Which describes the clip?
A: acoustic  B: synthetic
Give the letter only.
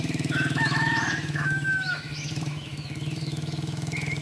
B